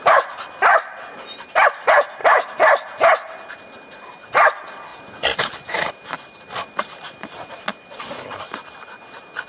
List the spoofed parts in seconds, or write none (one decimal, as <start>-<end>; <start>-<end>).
none